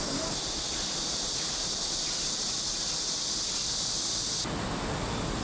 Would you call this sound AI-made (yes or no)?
no